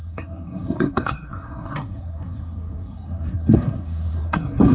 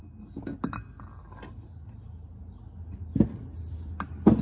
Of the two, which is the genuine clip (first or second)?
second